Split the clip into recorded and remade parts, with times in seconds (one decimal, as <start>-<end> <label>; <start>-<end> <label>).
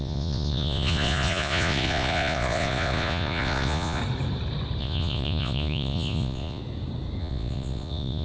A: 0.0-4.0 remade; 4.0-4.8 recorded; 4.8-6.6 remade; 6.6-7.2 recorded; 7.2-8.2 remade